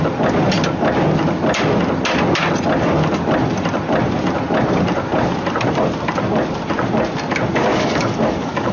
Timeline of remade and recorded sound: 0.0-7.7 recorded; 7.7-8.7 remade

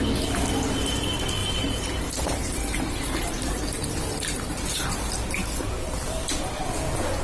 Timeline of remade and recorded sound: 0.0-1.4 recorded; 1.4-5.1 remade; 5.1-7.2 recorded

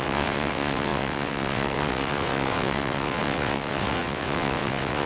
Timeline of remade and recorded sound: 0.0-5.1 remade